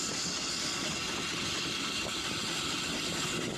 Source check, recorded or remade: recorded